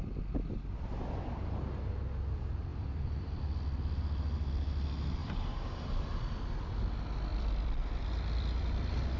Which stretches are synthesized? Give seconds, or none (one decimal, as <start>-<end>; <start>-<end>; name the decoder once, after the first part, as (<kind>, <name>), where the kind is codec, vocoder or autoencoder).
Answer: 2.7-3.4 (vocoder, BigVGAN v2); 5.2-6.1; 7.3-8.6